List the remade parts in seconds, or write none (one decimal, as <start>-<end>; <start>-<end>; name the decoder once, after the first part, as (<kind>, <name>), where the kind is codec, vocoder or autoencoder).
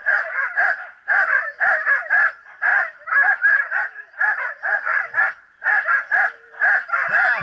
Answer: 0.0-1.9 (vocoder, BigVGAN v2); 2.7-4.4; 4.9-6.0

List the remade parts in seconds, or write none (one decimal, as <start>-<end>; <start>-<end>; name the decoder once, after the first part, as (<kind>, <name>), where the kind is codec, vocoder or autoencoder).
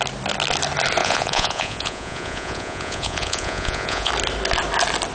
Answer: 1.0-4.1 (vocoder, Vocos)